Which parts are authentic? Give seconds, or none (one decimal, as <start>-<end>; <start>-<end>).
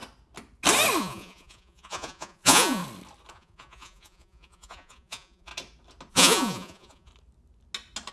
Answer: 0.0-1.0; 2.8-3.3; 5.5-6.1; 7.1-8.1